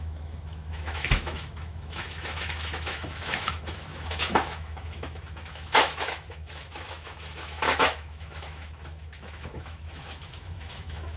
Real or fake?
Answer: fake